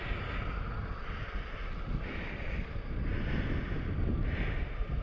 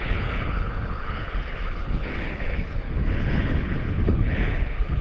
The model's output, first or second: second